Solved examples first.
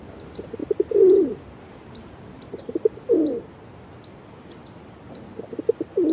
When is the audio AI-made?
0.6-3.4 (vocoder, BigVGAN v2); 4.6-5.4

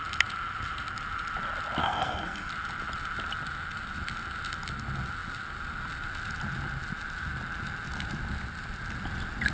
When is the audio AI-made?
1.8-2.5 (codec, SNAC)

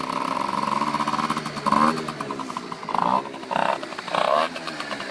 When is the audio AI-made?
0.0-0.9 (vocoder, BigVGAN v2); 4.0-5.1